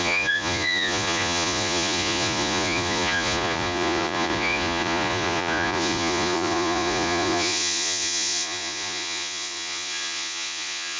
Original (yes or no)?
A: no